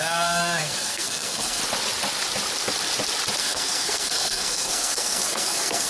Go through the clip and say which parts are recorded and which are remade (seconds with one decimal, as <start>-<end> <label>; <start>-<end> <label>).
0.0-1.6 remade; 1.6-3.4 recorded; 3.4-5.9 remade